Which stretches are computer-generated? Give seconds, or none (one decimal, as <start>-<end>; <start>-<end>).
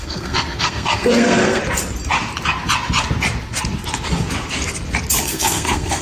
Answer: 0.0-1.6; 5.2-6.0